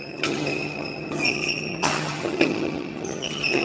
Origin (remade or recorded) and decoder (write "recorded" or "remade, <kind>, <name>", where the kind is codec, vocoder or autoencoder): remade, vocoder, HiFi-GAN